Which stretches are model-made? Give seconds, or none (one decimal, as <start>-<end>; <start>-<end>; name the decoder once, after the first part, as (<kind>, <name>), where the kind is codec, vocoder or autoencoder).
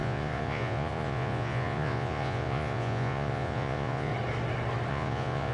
0.0-4.1 (vocoder, Vocos); 4.9-5.5